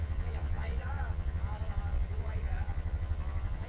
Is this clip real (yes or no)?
no